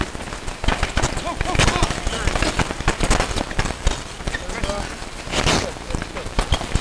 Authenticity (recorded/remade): recorded